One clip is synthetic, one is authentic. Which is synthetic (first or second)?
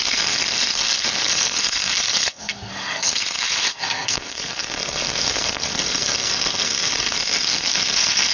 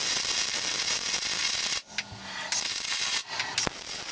first